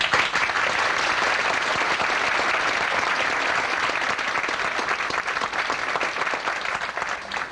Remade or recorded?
recorded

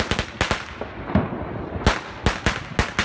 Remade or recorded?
recorded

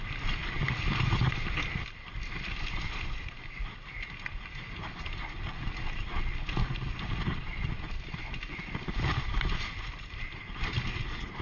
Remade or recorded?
recorded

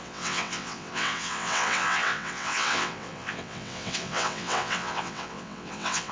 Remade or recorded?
remade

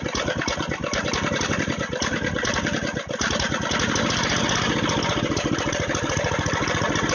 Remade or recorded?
recorded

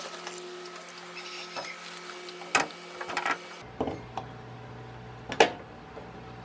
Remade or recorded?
recorded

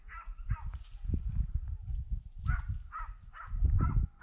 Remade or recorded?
recorded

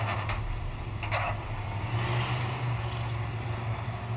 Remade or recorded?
recorded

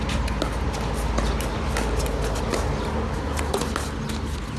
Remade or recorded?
recorded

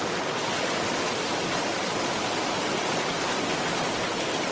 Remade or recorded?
recorded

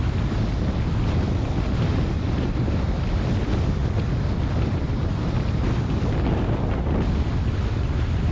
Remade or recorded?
recorded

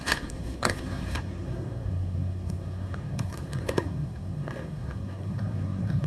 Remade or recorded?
remade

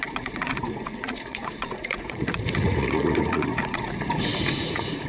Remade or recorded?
remade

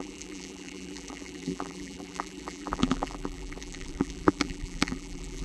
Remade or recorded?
remade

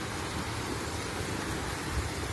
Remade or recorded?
recorded